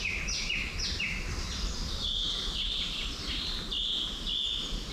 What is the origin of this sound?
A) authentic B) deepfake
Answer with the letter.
A